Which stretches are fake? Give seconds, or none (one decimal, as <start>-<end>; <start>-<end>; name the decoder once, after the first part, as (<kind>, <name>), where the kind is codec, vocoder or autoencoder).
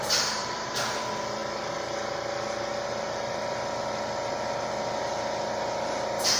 0.4-1.0 (vocoder, BigVGAN v2)